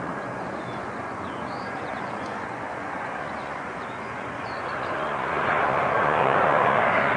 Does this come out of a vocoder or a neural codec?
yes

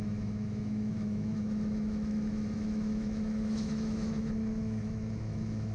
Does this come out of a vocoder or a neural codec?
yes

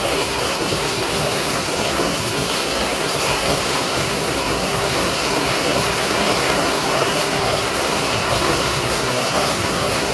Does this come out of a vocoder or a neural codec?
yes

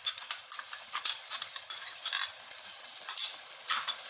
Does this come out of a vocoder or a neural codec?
no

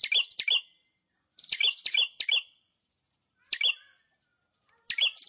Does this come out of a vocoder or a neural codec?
no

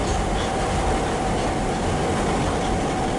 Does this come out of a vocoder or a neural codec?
no